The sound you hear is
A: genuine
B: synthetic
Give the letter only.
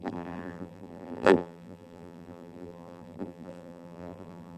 B